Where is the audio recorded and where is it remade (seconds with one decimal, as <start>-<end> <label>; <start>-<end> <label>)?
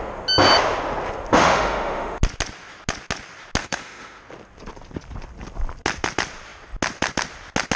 0.0-1.3 recorded; 1.3-2.2 remade; 2.2-3.6 recorded; 3.6-4.2 remade; 4.2-7.8 recorded